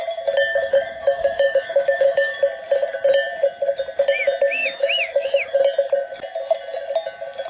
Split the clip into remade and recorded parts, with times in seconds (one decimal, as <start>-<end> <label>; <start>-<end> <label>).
0.0-0.5 recorded; 0.5-2.3 remade; 2.3-4.6 recorded; 4.6-5.6 remade; 5.6-7.5 recorded